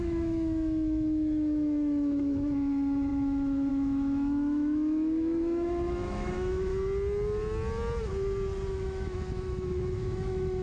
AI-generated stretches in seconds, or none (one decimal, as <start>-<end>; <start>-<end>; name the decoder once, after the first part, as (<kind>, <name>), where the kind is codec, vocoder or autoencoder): 0.0-6.7 (autoencoder, DAC-VAE); 8.7-10.6